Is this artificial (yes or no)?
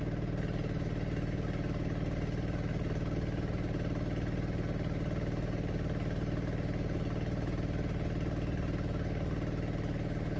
no